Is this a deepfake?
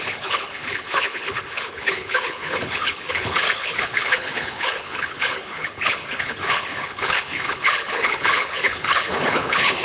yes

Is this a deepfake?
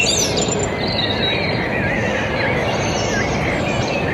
no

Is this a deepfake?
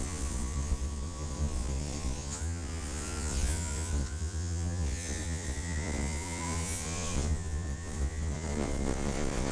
yes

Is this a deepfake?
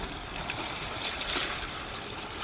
yes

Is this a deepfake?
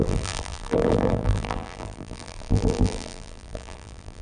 yes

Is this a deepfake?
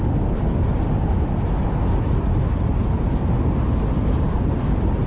no